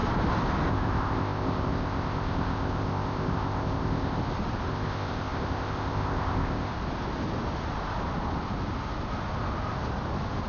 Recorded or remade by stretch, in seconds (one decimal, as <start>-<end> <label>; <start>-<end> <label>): 0.0-0.7 recorded; 0.7-4.2 remade; 4.2-4.7 recorded; 4.7-6.7 remade; 6.7-10.5 recorded